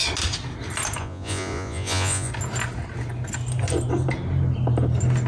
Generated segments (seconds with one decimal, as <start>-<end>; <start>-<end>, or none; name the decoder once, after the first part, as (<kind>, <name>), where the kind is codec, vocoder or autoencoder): 1.0-2.3 (vocoder, Vocos)